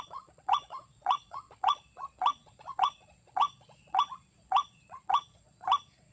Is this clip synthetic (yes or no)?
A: yes